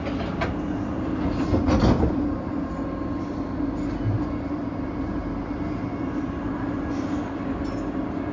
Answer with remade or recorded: recorded